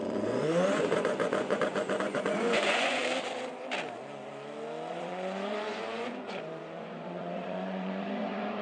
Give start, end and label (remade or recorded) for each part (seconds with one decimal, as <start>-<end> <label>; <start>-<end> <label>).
0.0-3.0 remade; 3.0-4.9 recorded; 4.9-8.6 remade

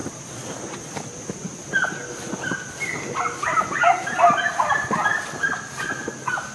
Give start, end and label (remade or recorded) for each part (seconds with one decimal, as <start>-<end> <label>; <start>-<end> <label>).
0.0-6.5 recorded

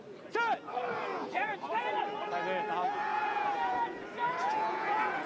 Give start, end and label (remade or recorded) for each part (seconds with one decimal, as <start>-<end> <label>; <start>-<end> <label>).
0.0-1.1 recorded; 1.1-1.9 remade; 1.9-3.1 recorded; 3.1-4.0 remade; 4.0-4.4 recorded; 4.4-5.3 remade

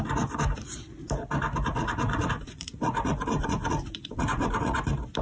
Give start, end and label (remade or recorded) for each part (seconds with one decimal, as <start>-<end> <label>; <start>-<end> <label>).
0.0-1.7 recorded; 1.7-4.8 remade; 4.8-5.2 recorded

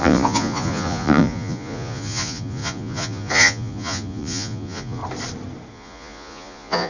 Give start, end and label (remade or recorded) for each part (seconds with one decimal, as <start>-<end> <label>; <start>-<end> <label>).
0.0-5.0 remade; 5.0-5.7 recorded; 5.7-6.9 remade

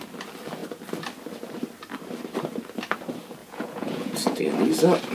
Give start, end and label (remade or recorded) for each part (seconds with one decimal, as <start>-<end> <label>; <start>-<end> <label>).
0.0-3.4 recorded; 3.4-4.4 remade; 4.4-5.1 recorded